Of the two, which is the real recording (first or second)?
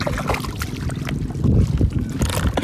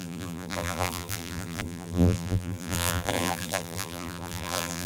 first